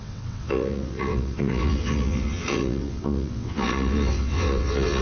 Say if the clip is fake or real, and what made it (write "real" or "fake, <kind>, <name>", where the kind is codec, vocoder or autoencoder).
fake, vocoder, WaveNeXt